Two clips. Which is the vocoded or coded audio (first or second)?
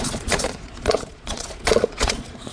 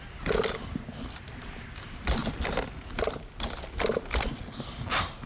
first